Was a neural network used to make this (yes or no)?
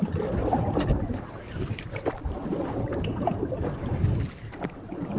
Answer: yes